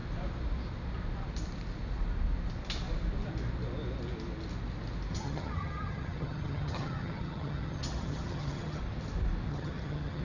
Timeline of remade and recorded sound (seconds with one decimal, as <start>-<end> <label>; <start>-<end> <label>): 0.0-5.1 recorded; 5.1-8.8 remade; 8.8-9.5 recorded; 9.5-10.2 remade